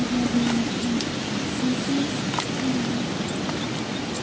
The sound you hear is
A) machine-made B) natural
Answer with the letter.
B